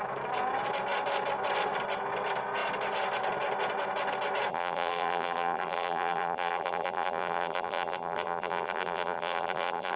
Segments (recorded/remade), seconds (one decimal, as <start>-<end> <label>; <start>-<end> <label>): 0.0-4.5 recorded; 4.5-10.0 remade